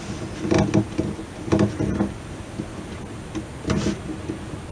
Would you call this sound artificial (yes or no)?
no